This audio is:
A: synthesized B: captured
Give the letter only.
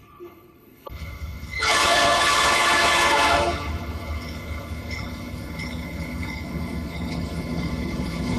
A